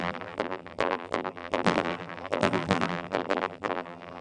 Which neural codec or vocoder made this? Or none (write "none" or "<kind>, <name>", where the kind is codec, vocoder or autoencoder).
vocoder, BigVGAN v2